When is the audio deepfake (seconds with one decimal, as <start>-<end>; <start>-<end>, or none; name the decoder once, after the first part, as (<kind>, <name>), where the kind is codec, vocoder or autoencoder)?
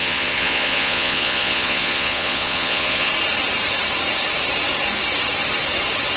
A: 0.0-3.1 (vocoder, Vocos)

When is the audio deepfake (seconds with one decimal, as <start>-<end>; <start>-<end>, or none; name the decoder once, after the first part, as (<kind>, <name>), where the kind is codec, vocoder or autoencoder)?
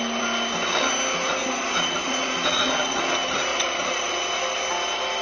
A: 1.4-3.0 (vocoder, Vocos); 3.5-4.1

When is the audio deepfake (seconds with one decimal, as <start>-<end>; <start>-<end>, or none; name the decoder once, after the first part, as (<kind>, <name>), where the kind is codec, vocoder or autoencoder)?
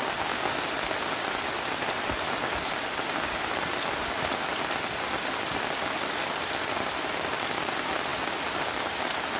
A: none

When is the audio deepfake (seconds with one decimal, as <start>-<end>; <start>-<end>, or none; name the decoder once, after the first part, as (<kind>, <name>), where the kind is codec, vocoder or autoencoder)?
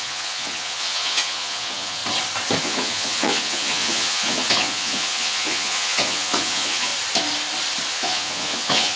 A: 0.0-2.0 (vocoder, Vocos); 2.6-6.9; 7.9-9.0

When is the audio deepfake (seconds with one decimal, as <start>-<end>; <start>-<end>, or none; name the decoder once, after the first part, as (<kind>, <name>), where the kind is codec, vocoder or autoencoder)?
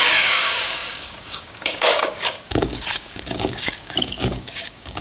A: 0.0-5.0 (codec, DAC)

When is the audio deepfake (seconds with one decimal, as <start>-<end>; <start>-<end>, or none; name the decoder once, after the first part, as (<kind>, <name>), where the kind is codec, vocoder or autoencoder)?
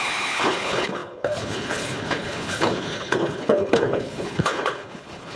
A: 0.0-5.4 (codec, HILCodec)